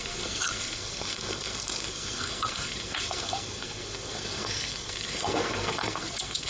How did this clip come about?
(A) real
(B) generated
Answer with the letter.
B